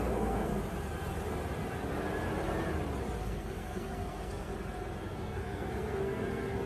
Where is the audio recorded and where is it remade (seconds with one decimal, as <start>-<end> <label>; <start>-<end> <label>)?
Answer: 0.0-0.5 remade; 0.5-3.2 recorded; 3.2-4.5 remade; 4.5-5.0 recorded; 5.0-6.7 remade